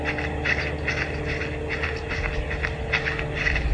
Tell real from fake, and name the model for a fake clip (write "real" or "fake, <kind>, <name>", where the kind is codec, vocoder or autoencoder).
real